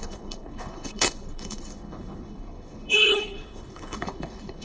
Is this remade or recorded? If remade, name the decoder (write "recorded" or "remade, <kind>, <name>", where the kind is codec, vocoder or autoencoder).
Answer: remade, codec, HILCodec